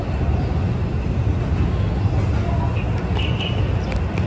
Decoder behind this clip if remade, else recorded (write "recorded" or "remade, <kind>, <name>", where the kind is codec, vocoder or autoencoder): recorded